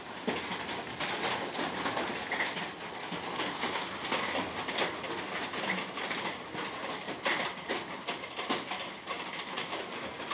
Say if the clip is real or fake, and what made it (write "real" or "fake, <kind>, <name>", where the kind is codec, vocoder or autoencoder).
real